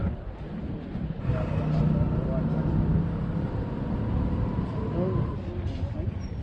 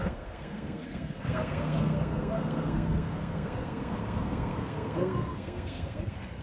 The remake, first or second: second